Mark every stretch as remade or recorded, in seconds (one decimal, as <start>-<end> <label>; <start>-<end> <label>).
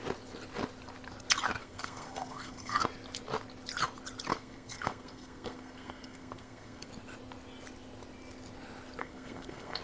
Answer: 0.0-1.6 recorded; 1.6-2.8 remade; 2.8-4.3 recorded; 4.3-6.9 remade; 6.9-9.0 recorded; 9.0-9.8 remade